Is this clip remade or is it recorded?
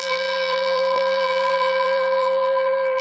remade